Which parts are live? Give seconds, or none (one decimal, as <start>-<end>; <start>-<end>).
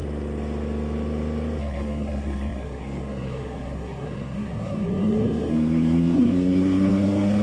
0.0-1.6